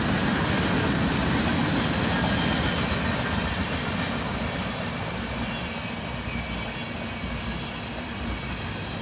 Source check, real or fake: real